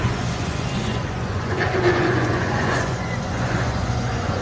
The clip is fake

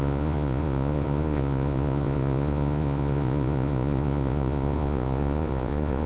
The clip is fake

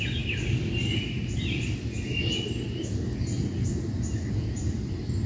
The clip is real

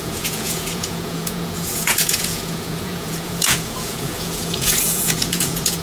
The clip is fake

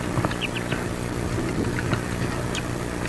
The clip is real